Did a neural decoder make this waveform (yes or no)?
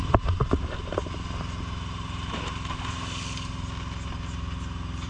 no